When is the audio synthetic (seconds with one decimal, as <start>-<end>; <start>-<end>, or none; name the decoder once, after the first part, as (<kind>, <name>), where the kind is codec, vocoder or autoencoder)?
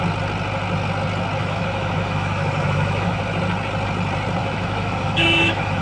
1.4-3.2 (autoencoder, DAC-VAE); 4.4-5.8